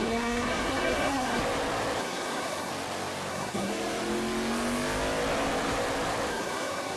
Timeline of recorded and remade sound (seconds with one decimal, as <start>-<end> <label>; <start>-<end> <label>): 0.0-1.4 remade; 1.4-2.0 recorded; 2.0-2.7 remade; 2.7-3.3 recorded; 3.3-3.7 remade; 3.7-6.3 recorded; 6.3-7.0 remade